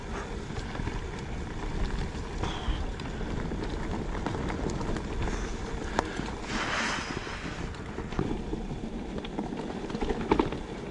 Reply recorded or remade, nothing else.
recorded